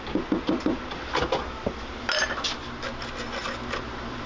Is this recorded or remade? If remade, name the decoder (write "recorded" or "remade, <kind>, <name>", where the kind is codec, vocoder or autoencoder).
recorded